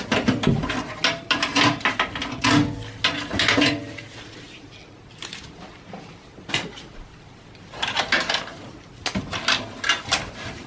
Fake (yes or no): no